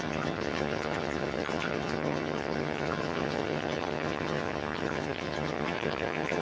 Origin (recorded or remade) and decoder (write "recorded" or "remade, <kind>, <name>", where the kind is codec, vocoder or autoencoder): remade, vocoder, HiFi-GAN